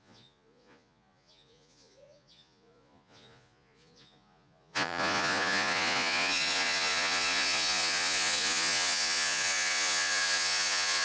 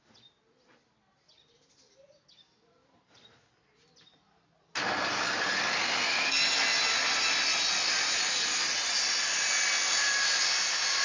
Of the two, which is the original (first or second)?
second